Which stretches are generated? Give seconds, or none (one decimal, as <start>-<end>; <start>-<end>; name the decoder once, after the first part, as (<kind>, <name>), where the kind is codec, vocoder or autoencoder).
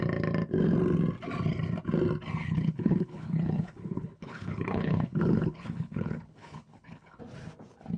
2.4-7.2 (codec, HILCodec)